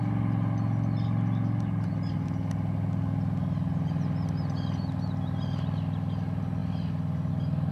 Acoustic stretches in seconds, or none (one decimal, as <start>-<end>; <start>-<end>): 0.0-7.7